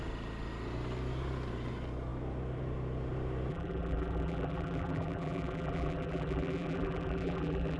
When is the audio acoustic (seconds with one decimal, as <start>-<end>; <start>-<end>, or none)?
0.0-3.5